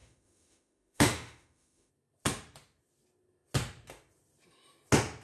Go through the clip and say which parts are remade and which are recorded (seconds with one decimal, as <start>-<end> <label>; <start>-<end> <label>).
0.0-1.9 remade; 1.9-5.2 recorded

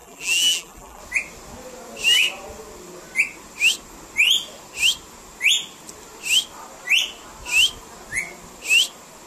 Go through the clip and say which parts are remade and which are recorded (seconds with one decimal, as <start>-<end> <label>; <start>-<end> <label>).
0.0-1.0 remade; 1.0-9.3 recorded

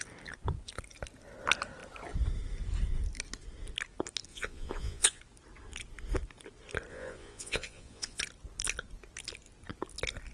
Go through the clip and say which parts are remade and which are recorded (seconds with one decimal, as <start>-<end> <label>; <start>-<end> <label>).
0.0-4.3 recorded; 4.3-5.2 remade; 5.2-6.9 recorded; 6.9-8.2 remade; 8.2-10.3 recorded

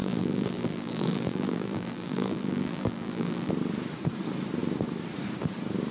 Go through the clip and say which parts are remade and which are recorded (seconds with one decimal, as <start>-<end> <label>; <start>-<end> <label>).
0.0-3.5 remade; 3.5-5.9 recorded

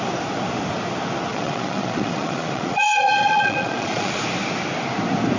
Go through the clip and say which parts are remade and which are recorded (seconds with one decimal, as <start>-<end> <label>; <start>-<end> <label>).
0.0-1.3 recorded; 1.3-4.2 remade; 4.2-5.4 recorded

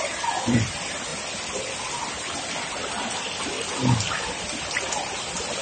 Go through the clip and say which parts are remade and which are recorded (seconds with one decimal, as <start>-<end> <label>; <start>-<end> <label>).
0.0-1.1 remade; 1.1-4.5 recorded; 4.5-5.6 remade

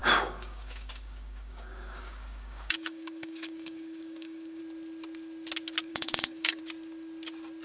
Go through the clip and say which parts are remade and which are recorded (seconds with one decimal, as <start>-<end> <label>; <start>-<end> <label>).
0.0-4.6 remade; 4.6-5.9 recorded; 5.9-6.6 remade; 6.6-7.6 recorded